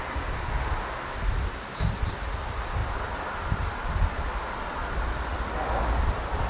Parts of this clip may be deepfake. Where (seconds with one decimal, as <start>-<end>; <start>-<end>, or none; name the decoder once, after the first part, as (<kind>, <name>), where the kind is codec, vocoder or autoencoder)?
none

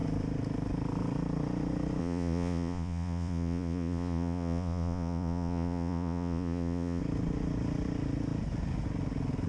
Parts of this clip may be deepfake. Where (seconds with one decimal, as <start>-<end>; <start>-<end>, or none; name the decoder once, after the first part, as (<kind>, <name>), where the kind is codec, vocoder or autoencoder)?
2.0-7.0 (vocoder, Vocos)